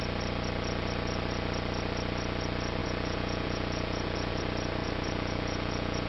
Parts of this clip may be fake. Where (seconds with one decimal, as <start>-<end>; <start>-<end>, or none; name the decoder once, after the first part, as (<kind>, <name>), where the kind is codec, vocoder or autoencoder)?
2.8-4.3 (vocoder, Vocos); 4.8-6.1